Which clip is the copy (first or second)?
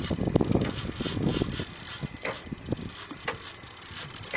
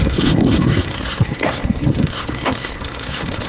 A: second